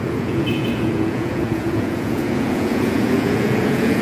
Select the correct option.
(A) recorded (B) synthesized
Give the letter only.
B